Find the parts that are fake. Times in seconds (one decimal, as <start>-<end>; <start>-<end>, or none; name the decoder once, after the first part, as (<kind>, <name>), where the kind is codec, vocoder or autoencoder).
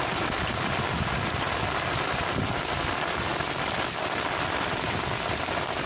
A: 3.3-5.0 (vocoder, BigVGAN v2)